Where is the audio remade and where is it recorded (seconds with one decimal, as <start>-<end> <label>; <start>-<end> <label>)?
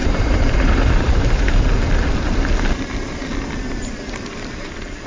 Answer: 0.0-1.5 remade; 1.5-5.1 recorded